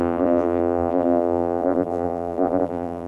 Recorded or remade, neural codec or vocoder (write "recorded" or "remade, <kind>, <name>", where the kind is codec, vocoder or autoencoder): remade, vocoder, BigVGAN v2